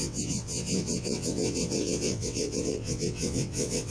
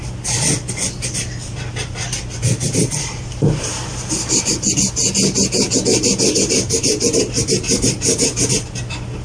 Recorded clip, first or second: second